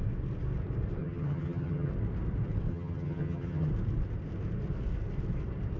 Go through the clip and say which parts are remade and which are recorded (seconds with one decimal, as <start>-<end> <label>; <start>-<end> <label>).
0.0-1.0 recorded; 1.0-1.9 remade; 1.9-2.7 recorded; 2.7-3.7 remade; 3.7-5.8 recorded